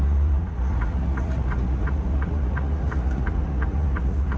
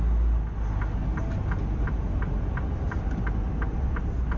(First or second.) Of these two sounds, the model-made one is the first